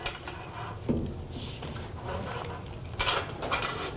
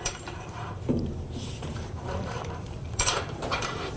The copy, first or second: second